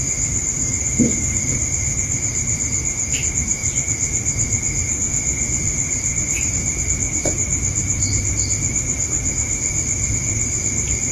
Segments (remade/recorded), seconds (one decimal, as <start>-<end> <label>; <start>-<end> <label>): 0.0-11.1 recorded